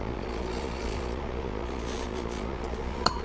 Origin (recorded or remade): remade